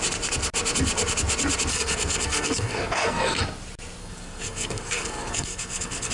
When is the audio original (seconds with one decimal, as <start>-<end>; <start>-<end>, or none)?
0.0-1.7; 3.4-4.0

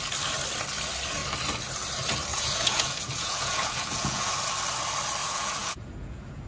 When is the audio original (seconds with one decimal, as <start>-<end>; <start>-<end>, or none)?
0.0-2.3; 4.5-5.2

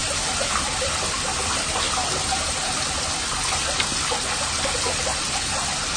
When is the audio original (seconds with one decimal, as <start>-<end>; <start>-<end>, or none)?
0.0-6.0